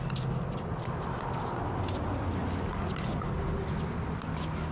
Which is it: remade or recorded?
recorded